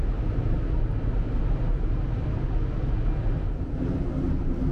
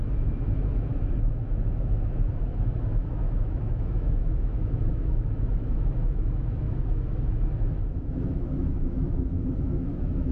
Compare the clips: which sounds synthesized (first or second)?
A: second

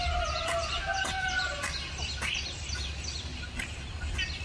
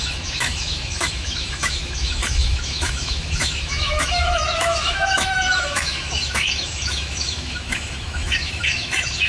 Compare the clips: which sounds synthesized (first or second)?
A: second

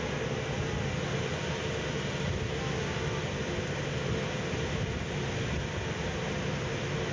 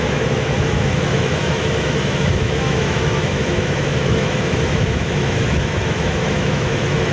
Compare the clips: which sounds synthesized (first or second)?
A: second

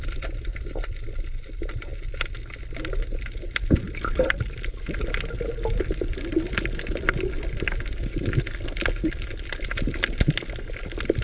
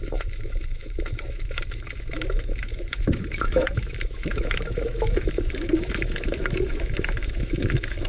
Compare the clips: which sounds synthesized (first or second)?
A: second